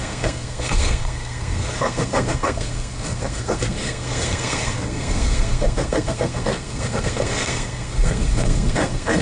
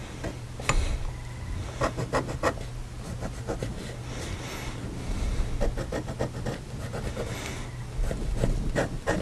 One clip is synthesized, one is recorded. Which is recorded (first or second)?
second